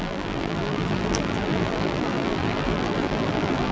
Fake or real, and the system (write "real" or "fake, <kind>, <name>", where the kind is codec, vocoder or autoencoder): fake, vocoder, BigVGAN v2